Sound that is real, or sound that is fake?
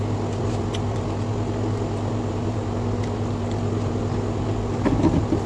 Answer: real